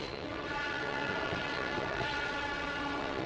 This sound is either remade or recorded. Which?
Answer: remade